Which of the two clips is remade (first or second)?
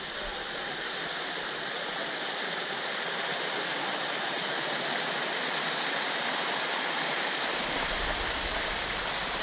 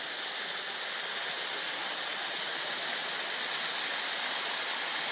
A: first